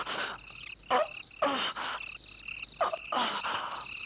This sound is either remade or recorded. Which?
recorded